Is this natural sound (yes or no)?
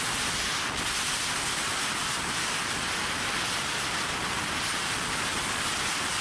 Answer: yes